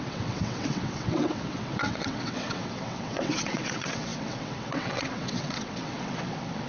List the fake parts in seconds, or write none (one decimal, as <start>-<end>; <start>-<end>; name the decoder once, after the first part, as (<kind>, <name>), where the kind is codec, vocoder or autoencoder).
0.0-6.7 (vocoder, WaveNeXt)